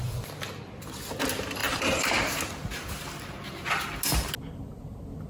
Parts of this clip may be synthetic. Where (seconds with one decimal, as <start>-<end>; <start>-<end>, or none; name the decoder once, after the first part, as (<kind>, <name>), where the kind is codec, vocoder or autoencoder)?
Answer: 1.6-2.1 (vocoder, BigVGAN v2)